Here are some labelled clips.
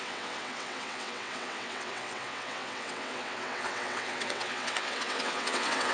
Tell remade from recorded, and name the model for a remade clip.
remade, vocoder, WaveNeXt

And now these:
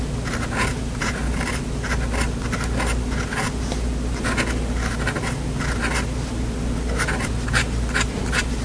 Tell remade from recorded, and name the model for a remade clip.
recorded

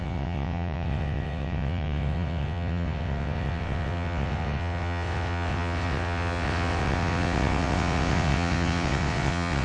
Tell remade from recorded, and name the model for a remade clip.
remade, vocoder, WaveNeXt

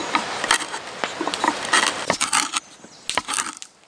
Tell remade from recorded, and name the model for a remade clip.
recorded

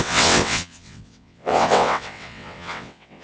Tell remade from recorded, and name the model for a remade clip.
remade, vocoder, WaveNeXt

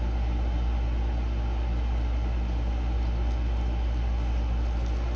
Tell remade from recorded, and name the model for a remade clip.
recorded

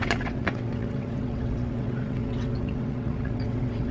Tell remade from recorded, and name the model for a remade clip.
remade, vocoder, WaveNeXt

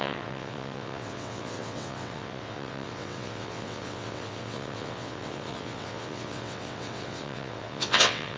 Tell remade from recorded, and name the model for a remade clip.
remade, vocoder, WaveNeXt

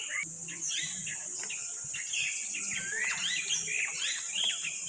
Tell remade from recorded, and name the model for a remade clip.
recorded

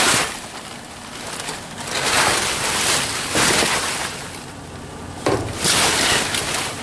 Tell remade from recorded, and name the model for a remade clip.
recorded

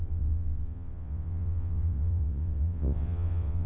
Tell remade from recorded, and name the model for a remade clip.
remade, vocoder, WaveNeXt